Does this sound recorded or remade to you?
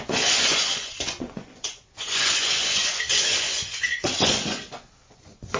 remade